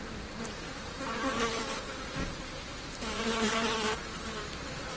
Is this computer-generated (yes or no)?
yes